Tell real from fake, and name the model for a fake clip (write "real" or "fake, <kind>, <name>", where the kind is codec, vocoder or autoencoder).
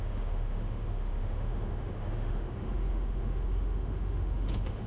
fake, autoencoder, DAC-VAE